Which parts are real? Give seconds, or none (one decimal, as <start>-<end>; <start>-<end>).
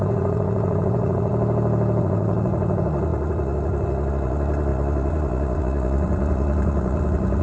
1.3-2.0